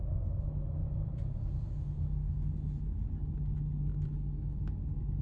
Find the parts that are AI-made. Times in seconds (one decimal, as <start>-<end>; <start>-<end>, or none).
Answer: 0.8-1.5